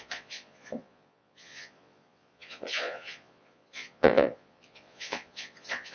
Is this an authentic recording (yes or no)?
no